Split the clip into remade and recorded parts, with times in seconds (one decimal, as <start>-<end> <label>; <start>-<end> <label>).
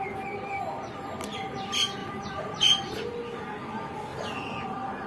0.0-2.0 recorded; 2.0-3.2 remade; 3.2-4.1 recorded; 4.1-5.1 remade